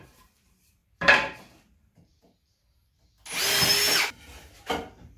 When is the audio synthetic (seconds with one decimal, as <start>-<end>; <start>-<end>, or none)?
0.0-2.1